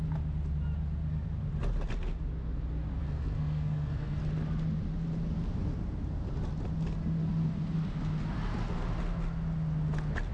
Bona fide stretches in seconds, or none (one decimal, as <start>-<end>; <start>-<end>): 0.0-3.0; 4.2-10.3